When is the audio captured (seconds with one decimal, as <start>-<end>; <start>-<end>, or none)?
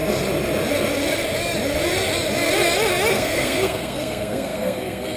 0.0-3.1